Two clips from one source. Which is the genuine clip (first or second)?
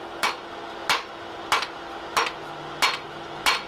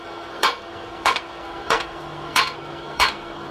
first